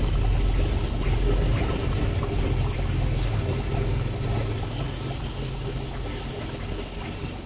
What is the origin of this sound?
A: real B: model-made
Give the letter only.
A